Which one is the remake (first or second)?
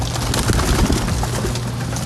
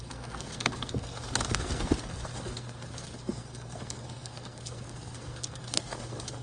second